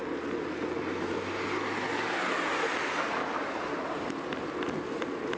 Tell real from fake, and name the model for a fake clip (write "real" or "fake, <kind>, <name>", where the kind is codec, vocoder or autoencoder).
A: real